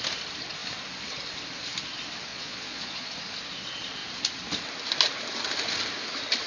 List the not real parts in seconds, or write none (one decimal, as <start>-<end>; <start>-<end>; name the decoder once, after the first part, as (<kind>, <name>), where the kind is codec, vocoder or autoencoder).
2.3-3.1 (vocoder, Vocos)